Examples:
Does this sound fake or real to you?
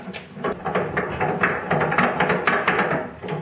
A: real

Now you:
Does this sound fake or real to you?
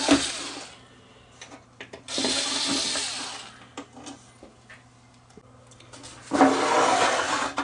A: real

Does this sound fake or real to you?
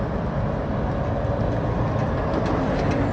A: real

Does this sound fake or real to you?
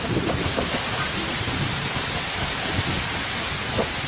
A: fake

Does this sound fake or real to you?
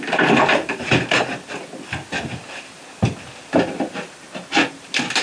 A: real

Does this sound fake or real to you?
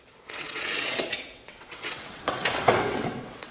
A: fake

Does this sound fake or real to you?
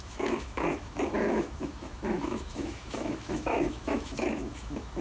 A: fake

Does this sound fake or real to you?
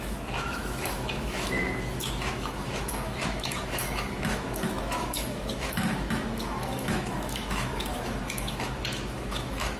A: fake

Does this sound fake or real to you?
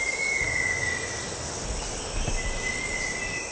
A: real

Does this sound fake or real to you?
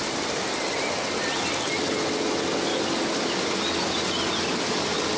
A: real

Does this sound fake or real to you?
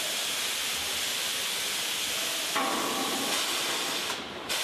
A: real